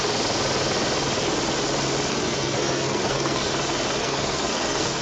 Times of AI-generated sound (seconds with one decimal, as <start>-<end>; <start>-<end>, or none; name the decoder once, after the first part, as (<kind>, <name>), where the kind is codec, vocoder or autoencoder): 2.1-3.5 (codec, SNAC); 4.0-5.0